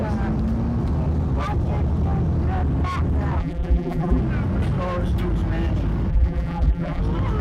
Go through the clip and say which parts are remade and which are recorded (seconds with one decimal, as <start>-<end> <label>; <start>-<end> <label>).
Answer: 0.0-3.4 recorded; 3.4-4.2 remade; 4.2-6.1 recorded; 6.1-7.0 remade; 7.0-7.4 recorded